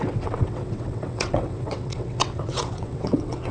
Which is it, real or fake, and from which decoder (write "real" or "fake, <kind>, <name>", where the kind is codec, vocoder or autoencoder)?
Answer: fake, vocoder, WaveNeXt